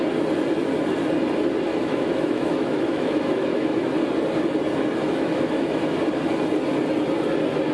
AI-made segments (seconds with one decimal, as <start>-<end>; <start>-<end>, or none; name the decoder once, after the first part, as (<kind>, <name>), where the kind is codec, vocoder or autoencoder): 1.7-3.9 (autoencoder, DAC-VAE); 5.0-5.8